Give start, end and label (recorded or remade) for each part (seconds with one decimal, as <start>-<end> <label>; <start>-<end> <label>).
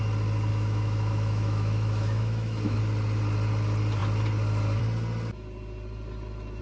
0.0-0.5 recorded; 0.5-2.8 remade; 2.8-6.6 recorded